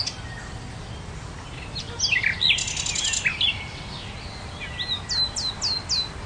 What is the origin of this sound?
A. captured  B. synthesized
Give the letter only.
A